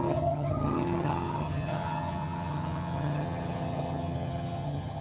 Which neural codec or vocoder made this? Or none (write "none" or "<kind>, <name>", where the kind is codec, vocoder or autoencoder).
vocoder, HiFi-GAN